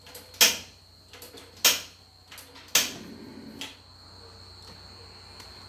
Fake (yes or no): no